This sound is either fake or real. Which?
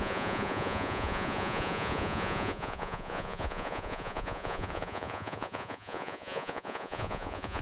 fake